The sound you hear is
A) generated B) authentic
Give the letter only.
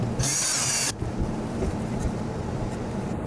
A